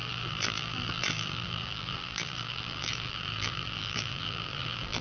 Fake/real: fake